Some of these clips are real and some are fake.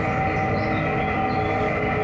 real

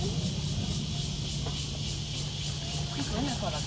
real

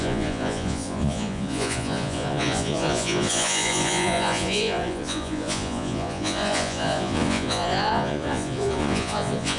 fake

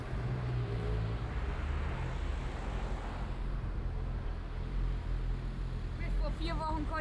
real